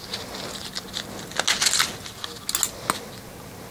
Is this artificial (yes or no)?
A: no